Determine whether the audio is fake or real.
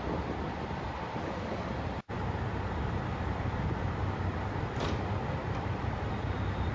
fake